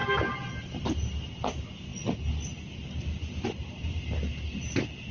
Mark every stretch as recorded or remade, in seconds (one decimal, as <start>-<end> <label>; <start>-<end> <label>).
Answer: 0.0-5.1 recorded